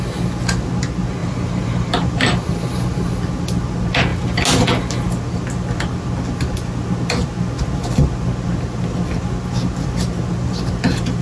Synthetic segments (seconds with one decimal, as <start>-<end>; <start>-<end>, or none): 1.2-3.1